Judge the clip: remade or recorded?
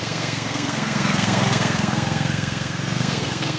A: remade